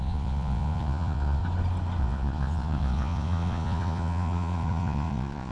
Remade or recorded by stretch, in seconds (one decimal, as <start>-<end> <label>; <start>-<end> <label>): 0.0-1.4 remade; 1.4-2.0 recorded; 2.0-5.5 remade

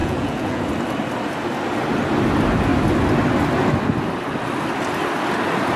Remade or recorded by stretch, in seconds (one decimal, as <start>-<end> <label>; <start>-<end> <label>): 0.0-0.6 remade; 0.6-5.8 recorded